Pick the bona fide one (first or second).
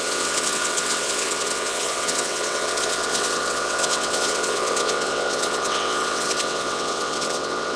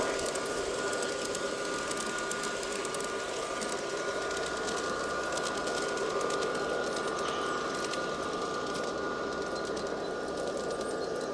second